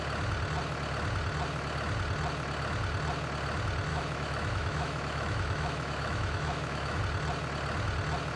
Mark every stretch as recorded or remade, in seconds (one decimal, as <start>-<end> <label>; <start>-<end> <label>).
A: 0.0-3.9 recorded; 3.9-7.0 remade; 7.0-8.4 recorded